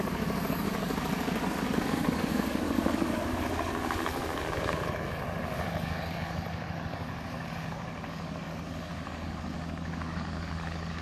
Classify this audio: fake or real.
fake